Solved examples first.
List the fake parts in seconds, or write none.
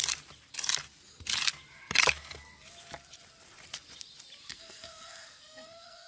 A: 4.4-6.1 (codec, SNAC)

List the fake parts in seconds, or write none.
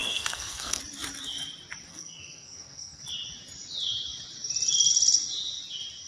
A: 0.0-0.8 (codec, SNAC); 1.9-3.0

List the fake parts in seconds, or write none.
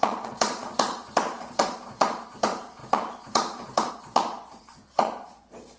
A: 0.0-5.8 (vocoder, Vocos)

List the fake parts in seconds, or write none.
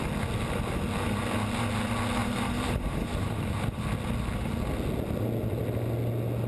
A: 2.2-3.8 (vocoder, BigVGAN v2)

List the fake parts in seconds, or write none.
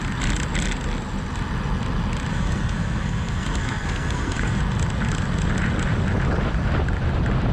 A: 2.3-4.6 (codec, SNAC)